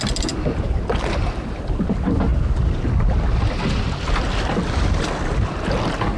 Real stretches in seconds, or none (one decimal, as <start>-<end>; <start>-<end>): 0.0-6.2